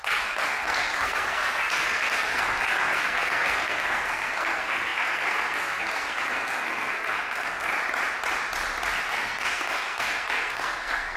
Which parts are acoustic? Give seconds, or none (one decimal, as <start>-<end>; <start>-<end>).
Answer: 7.7-9.1